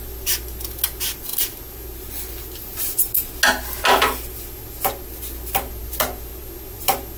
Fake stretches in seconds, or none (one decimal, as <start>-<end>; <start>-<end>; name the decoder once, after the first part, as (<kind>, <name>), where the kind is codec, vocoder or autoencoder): none